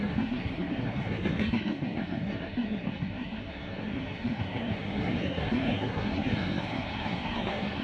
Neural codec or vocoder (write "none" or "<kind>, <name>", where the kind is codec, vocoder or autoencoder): codec, SNAC